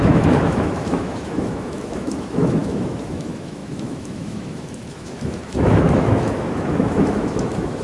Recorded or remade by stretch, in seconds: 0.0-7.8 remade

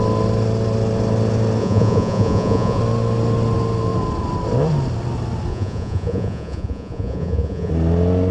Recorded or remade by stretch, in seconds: 0.0-1.6 recorded; 1.6-2.8 remade; 2.8-5.5 recorded; 5.5-7.7 remade; 7.7-8.3 recorded

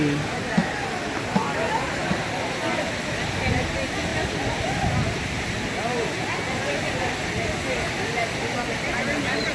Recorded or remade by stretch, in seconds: 0.0-9.5 recorded

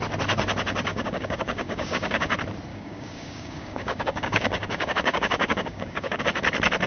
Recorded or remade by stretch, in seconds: 0.0-0.9 recorded; 0.9-2.3 remade; 2.3-2.7 recorded; 2.7-6.2 remade; 6.2-6.9 recorded

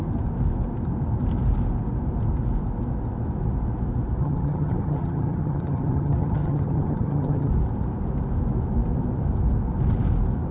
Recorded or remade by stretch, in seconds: 0.0-4.2 recorded; 4.2-7.5 remade; 7.5-10.5 recorded

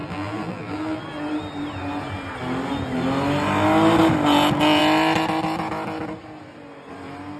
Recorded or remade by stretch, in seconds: 0.0-1.0 remade; 1.0-7.4 recorded

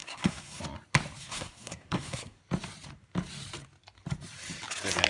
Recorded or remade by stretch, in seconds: 0.0-0.6 remade; 0.6-1.2 recorded; 1.2-2.4 remade; 2.4-5.1 recorded